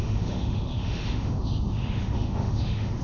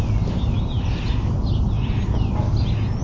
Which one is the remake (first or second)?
first